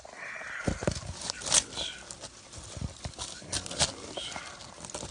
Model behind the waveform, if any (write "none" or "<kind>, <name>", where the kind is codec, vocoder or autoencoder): none